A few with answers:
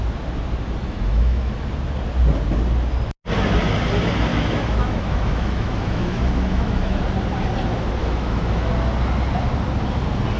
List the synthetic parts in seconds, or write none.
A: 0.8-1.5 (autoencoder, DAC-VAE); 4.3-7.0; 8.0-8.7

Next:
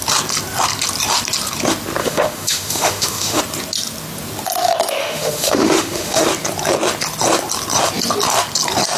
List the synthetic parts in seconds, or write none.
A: 2.0-3.4 (autoencoder, DAC-VAE); 5.0-6.3

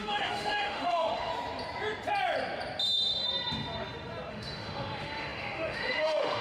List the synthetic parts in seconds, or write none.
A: 0.0-1.3 (autoencoder, DAC-VAE); 4.3-6.4

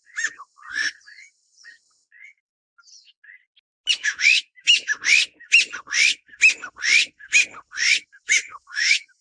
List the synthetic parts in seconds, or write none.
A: 4.0-5.0 (autoencoder, DAC-VAE); 8.5-9.2

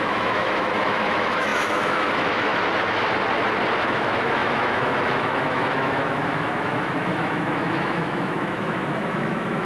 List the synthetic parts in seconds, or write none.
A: 0.0-2.5 (autoencoder, DAC-VAE); 3.8-9.7